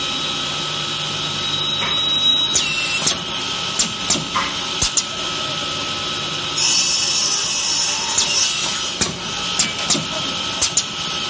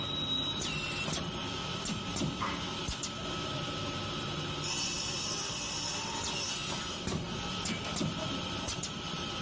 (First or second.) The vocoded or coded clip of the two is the second